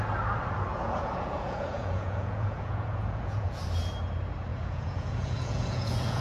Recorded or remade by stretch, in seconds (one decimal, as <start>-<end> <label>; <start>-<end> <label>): 0.0-0.7 recorded; 0.7-3.6 remade; 3.6-4.5 recorded; 4.5-6.2 remade